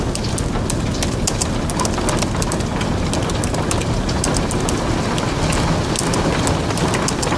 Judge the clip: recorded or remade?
recorded